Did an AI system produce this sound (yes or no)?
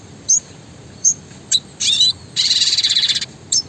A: yes